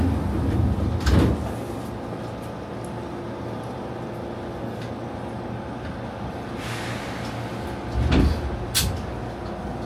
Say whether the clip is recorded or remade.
recorded